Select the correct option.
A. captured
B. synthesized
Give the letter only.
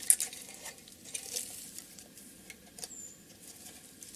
A